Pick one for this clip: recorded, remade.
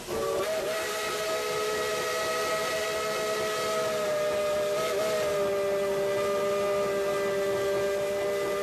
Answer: recorded